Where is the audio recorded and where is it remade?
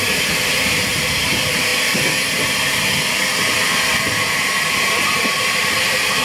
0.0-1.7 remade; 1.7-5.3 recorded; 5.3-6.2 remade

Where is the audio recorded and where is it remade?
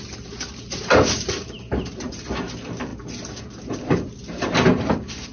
0.0-2.9 remade; 2.9-3.4 recorded; 3.4-5.3 remade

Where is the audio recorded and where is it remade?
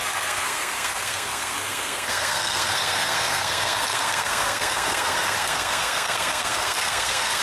0.0-7.4 remade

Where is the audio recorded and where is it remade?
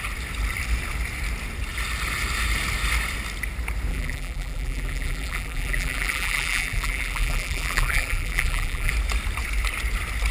0.0-3.9 recorded; 3.9-8.9 remade; 8.9-10.3 recorded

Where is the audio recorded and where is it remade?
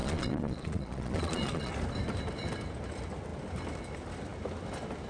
0.0-1.7 remade; 1.7-5.1 recorded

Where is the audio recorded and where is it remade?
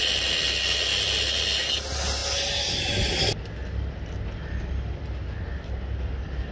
0.0-6.5 recorded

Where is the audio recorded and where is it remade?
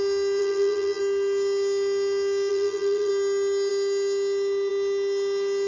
0.0-0.4 recorded; 0.4-1.0 remade; 1.0-2.5 recorded; 2.5-3.1 remade; 3.1-5.7 recorded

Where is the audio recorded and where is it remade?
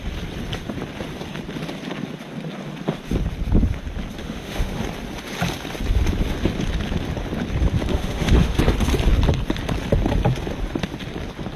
0.0-4.2 recorded; 4.2-4.8 remade; 4.8-7.9 recorded; 7.9-8.6 remade; 8.6-11.6 recorded